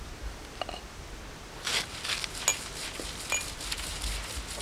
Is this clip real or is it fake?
real